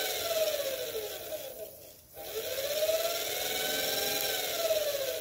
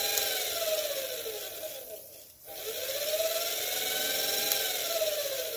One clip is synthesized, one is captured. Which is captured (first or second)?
first